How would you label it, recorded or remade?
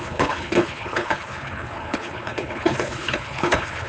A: remade